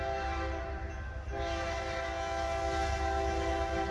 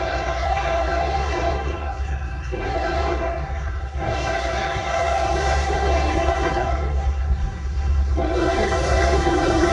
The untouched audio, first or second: first